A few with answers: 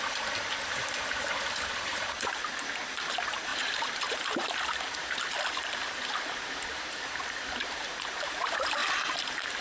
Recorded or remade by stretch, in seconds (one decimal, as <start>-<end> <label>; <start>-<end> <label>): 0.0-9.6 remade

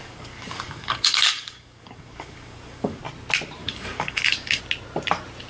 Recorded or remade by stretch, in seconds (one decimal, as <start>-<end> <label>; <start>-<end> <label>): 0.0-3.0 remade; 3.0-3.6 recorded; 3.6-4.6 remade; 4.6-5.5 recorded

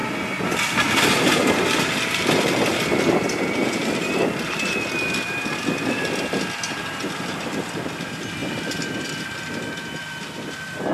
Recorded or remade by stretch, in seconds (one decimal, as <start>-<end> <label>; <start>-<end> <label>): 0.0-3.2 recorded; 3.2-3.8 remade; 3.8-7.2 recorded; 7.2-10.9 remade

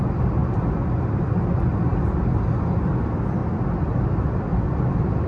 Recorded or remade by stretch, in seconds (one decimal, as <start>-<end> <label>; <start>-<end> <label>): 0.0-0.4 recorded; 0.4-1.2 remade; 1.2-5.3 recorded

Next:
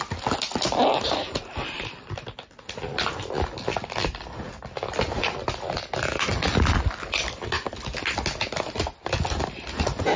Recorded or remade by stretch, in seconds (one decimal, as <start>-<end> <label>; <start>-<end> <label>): 0.0-0.5 recorded; 0.5-2.6 remade; 2.6-10.2 recorded